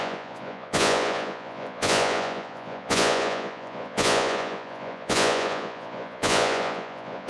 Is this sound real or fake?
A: fake